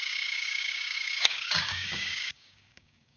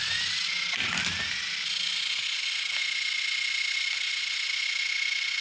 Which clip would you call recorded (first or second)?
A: second